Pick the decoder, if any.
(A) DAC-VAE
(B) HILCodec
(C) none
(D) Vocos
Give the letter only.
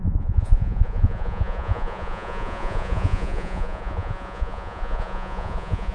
D